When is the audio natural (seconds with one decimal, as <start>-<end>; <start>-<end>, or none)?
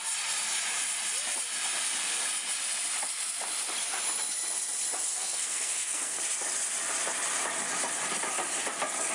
0.0-5.1; 6.2-9.1